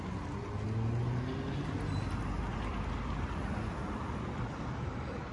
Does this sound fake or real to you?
real